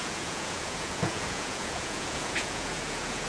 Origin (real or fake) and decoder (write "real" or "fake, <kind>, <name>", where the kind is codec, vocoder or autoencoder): fake, vocoder, Vocos